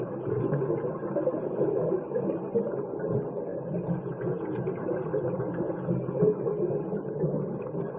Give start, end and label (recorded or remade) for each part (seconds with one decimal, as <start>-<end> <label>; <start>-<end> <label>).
0.0-8.0 recorded